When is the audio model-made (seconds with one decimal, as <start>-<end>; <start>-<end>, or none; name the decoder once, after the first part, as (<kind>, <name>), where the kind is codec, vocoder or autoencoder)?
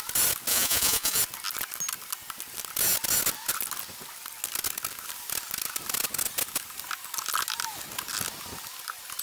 0.5-1.2 (vocoder, Vocos)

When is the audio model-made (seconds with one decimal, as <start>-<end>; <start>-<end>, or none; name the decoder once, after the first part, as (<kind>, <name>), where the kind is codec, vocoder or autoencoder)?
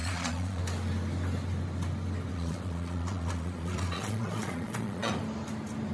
0.0-0.6 (vocoder, Vocos); 2.3-5.1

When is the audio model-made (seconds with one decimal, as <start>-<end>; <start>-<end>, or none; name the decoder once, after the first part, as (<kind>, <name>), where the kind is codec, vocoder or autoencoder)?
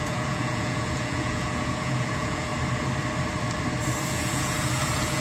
0.0-2.5 (vocoder, Vocos); 4.1-5.2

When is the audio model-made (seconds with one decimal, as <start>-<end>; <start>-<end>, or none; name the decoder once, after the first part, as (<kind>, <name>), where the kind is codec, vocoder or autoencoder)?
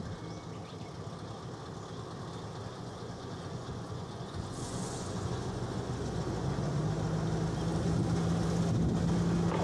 2.7-6.8 (vocoder, Vocos)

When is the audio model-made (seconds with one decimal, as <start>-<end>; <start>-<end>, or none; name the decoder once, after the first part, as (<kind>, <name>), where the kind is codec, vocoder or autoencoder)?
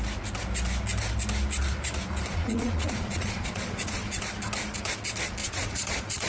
2.3-4.3 (vocoder, Vocos); 5.4-6.3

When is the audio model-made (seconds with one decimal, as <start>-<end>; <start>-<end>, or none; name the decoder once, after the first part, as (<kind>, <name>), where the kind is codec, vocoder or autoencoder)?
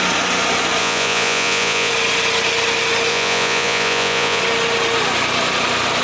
0.8-1.9 (vocoder, Vocos); 3.1-4.4